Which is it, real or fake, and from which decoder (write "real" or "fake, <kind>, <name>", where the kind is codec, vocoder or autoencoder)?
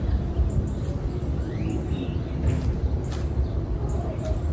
real